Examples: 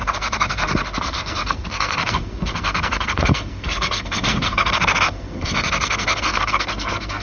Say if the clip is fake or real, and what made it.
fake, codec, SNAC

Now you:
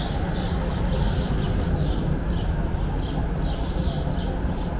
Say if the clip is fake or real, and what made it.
real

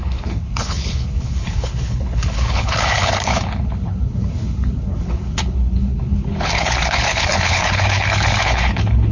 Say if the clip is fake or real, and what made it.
fake, codec, HILCodec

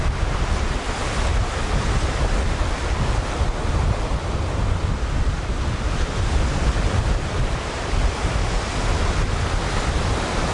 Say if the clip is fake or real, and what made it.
real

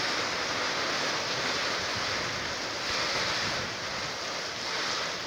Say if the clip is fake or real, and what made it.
real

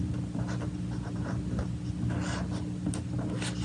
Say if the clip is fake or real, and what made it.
real